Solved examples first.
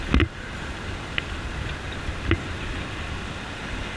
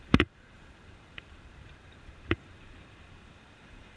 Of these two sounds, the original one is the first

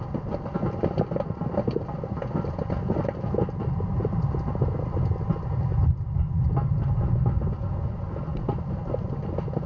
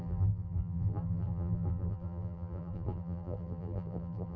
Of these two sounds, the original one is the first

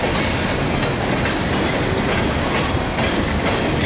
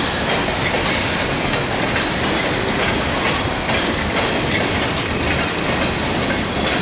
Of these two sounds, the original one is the first